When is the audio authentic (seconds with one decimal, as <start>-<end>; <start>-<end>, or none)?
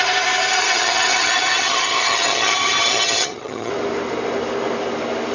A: 0.0-0.5; 3.7-5.3